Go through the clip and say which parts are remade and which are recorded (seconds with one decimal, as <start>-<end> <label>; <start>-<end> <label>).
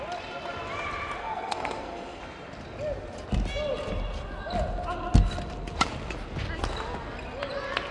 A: 0.0-1.2 recorded; 1.2-2.2 remade; 2.2-7.9 recorded